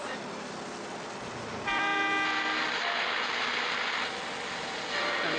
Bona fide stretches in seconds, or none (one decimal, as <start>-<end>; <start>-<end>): 0.0-5.4